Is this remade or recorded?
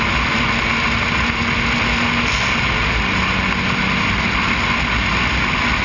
recorded